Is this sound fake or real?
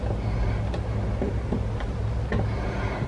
real